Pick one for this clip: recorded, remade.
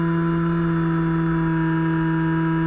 recorded